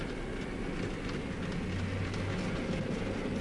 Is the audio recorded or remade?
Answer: recorded